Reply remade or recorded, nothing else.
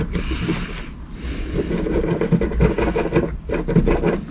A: recorded